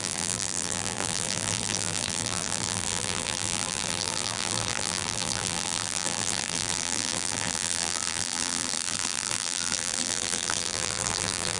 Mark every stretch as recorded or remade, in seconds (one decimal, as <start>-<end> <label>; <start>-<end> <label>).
0.0-11.6 remade